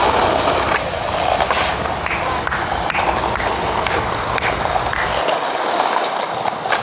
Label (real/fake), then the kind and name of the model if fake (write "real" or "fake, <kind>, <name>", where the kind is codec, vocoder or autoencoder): real